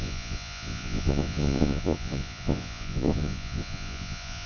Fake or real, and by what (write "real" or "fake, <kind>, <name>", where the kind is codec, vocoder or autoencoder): fake, vocoder, Vocos